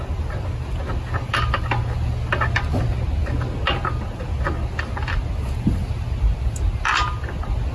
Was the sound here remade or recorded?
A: recorded